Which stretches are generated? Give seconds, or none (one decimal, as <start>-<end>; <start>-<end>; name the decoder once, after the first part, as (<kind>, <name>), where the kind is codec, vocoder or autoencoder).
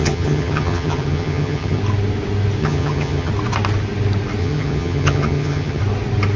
0.0-1.8 (vocoder, HiFi-GAN); 2.6-3.3; 4.4-5.8